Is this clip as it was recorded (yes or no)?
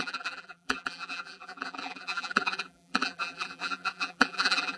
no